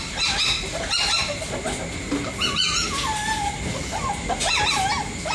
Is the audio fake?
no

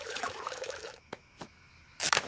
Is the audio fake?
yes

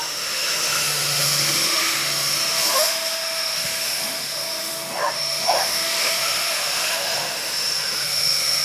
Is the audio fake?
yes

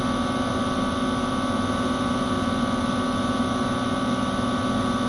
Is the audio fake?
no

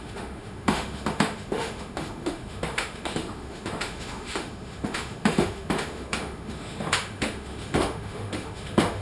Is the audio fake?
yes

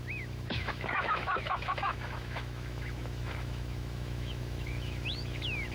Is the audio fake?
yes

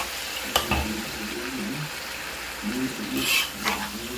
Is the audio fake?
no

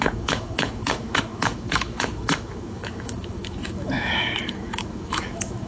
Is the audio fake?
yes